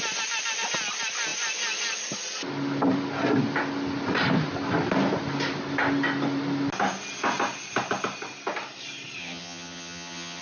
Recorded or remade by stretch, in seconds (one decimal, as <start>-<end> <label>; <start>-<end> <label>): 0.0-9.2 recorded; 9.2-10.4 remade